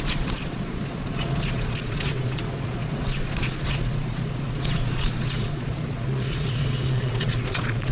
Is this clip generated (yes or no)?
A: yes